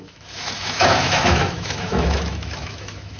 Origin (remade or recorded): remade